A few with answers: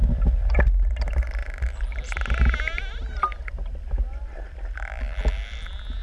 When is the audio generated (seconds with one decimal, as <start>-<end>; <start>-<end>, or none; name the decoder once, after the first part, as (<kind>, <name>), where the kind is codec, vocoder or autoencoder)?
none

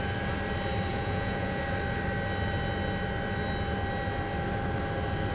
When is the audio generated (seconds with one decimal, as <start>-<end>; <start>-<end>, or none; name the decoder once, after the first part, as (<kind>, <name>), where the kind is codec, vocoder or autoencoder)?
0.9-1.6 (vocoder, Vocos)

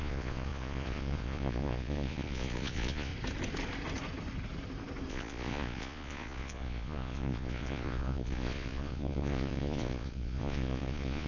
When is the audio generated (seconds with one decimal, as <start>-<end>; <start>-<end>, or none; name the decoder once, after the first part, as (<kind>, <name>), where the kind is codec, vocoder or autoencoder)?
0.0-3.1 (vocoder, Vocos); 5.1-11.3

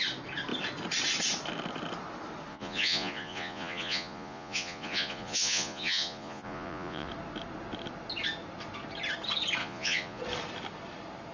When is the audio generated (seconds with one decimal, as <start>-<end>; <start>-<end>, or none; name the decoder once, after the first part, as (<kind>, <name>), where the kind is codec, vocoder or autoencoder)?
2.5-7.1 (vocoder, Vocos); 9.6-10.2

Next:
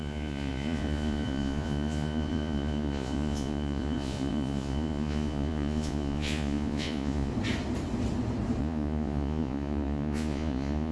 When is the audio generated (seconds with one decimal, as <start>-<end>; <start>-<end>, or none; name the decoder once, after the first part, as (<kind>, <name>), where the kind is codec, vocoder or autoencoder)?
0.0-7.3 (vocoder, Vocos); 8.6-10.9